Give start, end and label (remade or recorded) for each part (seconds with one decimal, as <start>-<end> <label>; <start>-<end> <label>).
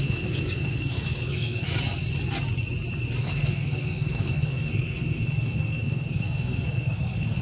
0.0-1.7 remade; 1.7-3.2 recorded; 3.2-7.4 remade